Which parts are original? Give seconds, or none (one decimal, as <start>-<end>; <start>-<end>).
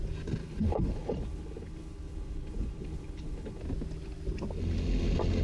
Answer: 0.0-0.4; 3.6-5.4